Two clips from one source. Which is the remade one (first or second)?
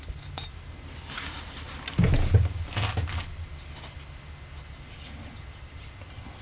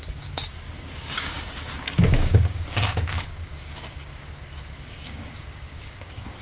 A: second